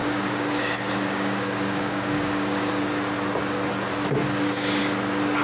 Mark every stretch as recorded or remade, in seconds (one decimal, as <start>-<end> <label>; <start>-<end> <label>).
0.0-2.7 remade; 2.7-4.2 recorded; 4.2-4.8 remade; 4.8-5.4 recorded